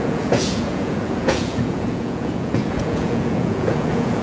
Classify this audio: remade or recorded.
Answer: remade